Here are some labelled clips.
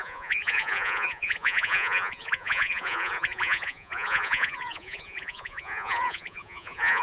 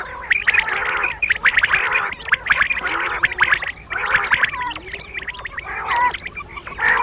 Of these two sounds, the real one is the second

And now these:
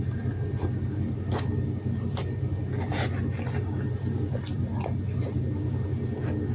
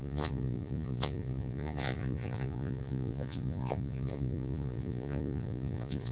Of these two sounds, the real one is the first